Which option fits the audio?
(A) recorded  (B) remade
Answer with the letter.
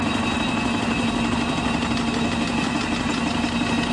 A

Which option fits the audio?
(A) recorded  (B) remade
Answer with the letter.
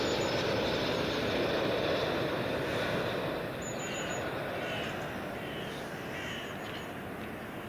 A